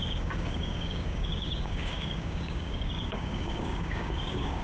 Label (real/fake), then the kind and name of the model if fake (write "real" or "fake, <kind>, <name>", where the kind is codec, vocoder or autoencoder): fake, codec, DAC